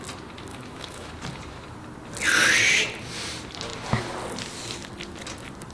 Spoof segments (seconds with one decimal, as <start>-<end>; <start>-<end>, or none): 0.5-1.1